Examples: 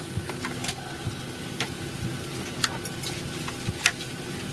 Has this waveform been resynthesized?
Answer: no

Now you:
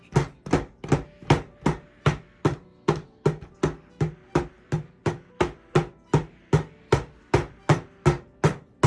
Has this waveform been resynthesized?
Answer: no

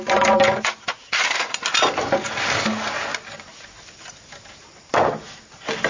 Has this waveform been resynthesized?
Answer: no